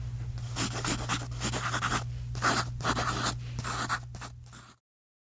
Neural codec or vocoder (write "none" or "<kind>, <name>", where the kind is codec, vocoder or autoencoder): none